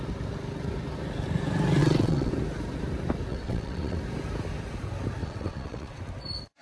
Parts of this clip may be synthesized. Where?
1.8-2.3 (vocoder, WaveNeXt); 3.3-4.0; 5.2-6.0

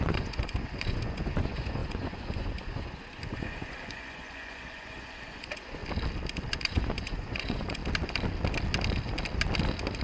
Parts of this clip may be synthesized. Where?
0.0-5.8 (vocoder, Vocos); 6.5-7.8

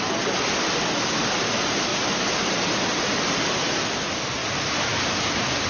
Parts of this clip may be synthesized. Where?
1.9-3.2 (vocoder, BigVGAN v2); 4.4-5.1